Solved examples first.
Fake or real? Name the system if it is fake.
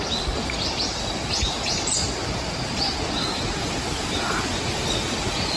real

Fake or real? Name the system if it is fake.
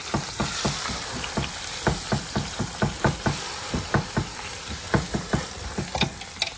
real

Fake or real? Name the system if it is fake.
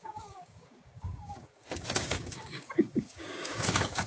fake, codec, DAC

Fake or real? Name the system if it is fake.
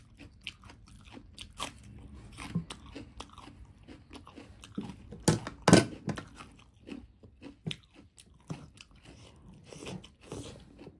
real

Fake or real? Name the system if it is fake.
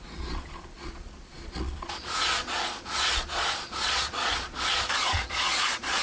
fake, vocoder, Vocos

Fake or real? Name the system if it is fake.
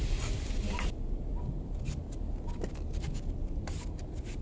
real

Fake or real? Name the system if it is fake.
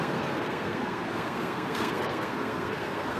fake, codec, SNAC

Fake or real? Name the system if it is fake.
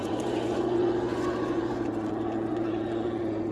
fake, vocoder, Vocos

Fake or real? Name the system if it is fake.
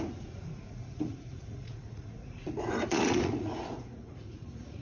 fake, vocoder, Vocos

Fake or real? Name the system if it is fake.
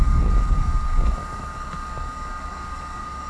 fake, codec, DAC